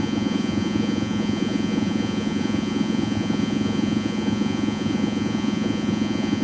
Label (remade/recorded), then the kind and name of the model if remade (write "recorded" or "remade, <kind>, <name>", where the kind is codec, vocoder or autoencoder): remade, vocoder, Vocos